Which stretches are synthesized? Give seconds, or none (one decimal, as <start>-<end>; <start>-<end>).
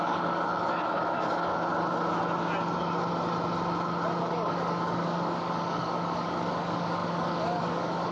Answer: 0.0-1.7; 4.2-8.1